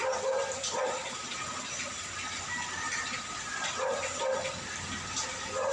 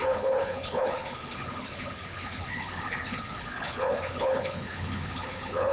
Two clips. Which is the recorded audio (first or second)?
first